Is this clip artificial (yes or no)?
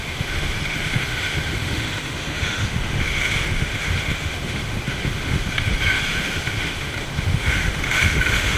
yes